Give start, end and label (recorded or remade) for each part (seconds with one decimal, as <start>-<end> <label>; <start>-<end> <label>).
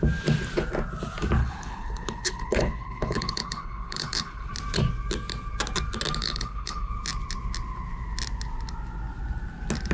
0.0-1.4 recorded; 1.4-4.5 remade; 4.5-6.2 recorded; 6.2-6.9 remade; 6.9-9.9 recorded